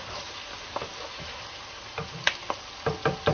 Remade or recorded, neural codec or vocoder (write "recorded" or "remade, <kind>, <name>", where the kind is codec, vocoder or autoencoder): recorded